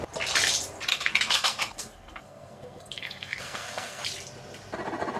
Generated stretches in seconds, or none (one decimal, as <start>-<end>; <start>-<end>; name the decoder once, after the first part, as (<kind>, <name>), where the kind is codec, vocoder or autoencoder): 0.9-4.0 (codec, SNAC)